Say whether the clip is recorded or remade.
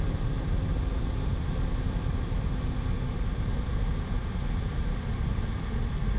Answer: remade